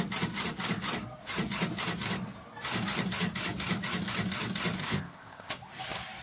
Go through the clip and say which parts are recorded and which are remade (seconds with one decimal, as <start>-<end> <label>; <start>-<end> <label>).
0.0-4.8 recorded; 4.8-5.5 remade; 5.5-6.2 recorded

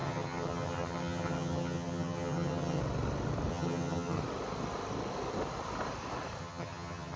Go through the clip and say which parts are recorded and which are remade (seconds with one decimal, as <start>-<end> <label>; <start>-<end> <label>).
0.0-2.8 remade; 2.8-3.5 recorded; 3.5-4.2 remade; 4.2-6.4 recorded; 6.4-7.2 remade

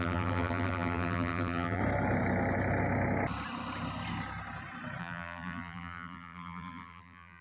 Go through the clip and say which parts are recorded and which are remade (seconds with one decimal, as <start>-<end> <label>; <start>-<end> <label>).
0.0-1.8 remade; 1.8-5.0 recorded; 5.0-7.4 remade

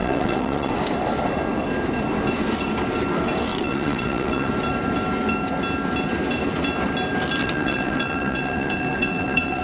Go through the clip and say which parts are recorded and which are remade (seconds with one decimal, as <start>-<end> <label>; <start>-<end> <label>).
0.0-0.7 remade; 0.7-3.5 recorded; 3.5-4.5 remade; 4.5-7.4 recorded; 7.4-9.6 remade

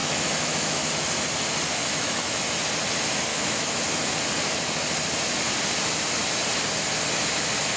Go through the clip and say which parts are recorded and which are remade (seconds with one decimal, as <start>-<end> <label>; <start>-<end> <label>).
0.0-0.8 remade; 0.8-1.8 recorded; 1.8-2.4 remade; 2.4-3.3 recorded; 3.3-3.8 remade; 3.8-7.8 recorded